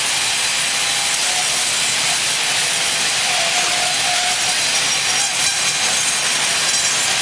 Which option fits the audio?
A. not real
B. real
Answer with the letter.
B